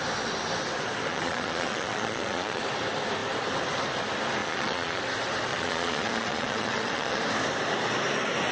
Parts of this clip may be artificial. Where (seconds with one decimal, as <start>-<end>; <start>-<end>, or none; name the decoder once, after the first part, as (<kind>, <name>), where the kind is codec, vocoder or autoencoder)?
1.1-2.6 (vocoder, Vocos); 4.4-5.0; 5.5-7.2